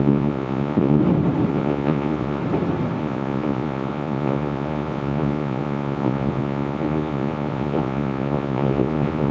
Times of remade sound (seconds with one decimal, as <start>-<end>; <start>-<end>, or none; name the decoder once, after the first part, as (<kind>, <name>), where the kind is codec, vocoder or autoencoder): 0.0-1.0 (vocoder, Vocos); 1.5-2.4; 3.0-9.3